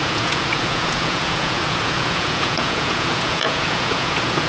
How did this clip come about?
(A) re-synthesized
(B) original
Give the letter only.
A